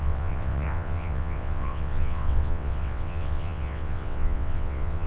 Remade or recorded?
remade